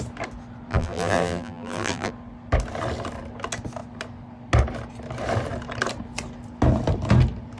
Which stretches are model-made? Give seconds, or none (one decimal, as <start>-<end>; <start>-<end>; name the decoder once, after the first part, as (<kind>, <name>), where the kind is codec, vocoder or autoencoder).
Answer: 0.7-2.1 (vocoder, BigVGAN v2)